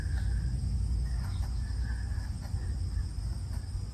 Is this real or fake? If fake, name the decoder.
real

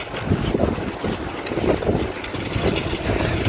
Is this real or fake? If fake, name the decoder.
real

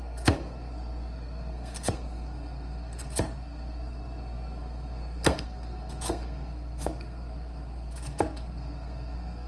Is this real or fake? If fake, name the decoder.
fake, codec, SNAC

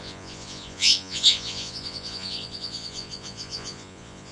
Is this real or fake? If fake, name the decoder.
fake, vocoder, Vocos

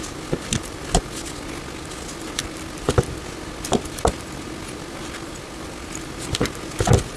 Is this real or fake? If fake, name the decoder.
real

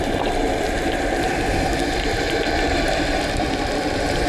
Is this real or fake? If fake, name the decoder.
fake, vocoder, BigVGAN v2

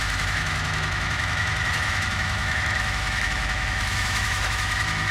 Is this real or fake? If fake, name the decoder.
fake, autoencoder, DAC-VAE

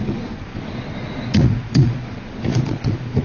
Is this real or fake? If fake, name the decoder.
fake, vocoder, Vocos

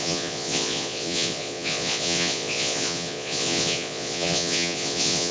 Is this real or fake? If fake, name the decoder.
fake, vocoder, Vocos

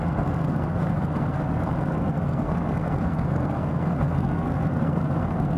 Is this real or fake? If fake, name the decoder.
fake, codec, SNAC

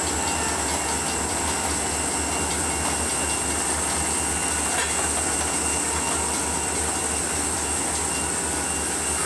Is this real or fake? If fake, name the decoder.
real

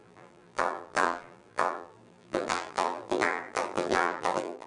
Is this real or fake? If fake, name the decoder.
fake, vocoder, BigVGAN v2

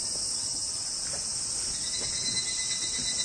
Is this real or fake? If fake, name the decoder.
real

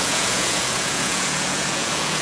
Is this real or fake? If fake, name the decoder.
fake, vocoder, Vocos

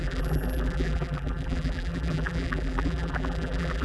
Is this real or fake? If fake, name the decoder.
fake, vocoder, BigVGAN v2